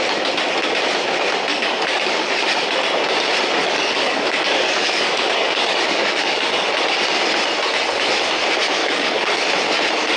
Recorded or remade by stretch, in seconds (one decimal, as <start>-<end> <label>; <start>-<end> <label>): 0.0-1.5 recorded; 1.5-2.3 remade; 2.3-3.6 recorded; 3.6-6.7 remade; 6.7-8.8 recorded; 8.8-9.5 remade; 9.5-10.2 recorded